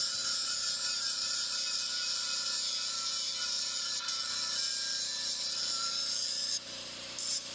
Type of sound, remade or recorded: remade